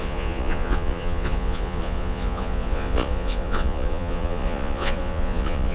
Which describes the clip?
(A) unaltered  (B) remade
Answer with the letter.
B